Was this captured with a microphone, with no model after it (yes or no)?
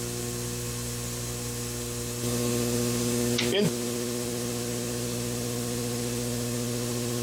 yes